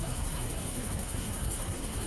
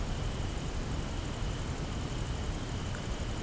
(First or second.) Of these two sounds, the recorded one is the second